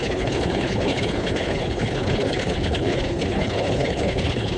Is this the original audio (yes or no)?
no